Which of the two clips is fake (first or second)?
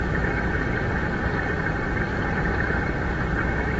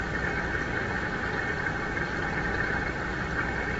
first